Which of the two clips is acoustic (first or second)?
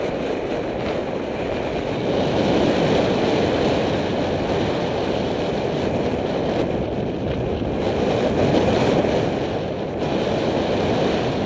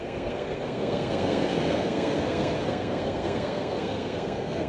first